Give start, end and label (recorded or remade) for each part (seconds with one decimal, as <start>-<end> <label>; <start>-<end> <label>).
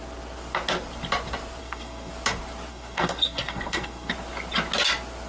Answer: 0.0-1.6 recorded; 1.6-2.1 remade; 2.1-2.7 recorded; 2.7-4.1 remade; 4.1-5.3 recorded